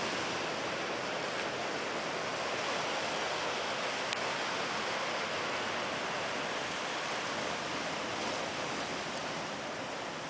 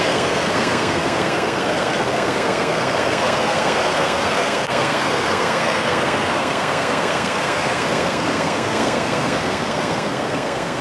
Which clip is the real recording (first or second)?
first